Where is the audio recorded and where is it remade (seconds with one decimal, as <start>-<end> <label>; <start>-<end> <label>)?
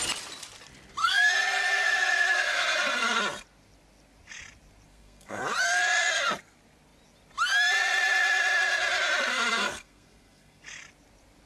0.0-1.0 recorded; 1.0-3.2 remade; 3.2-4.9 recorded; 4.9-5.4 remade; 5.4-9.3 recorded; 9.3-10.6 remade; 10.6-11.5 recorded